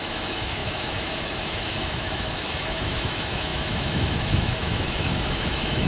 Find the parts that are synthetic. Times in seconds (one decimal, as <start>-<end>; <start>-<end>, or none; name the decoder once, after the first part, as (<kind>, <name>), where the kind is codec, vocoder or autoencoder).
0.0-5.9 (autoencoder, DAC-VAE)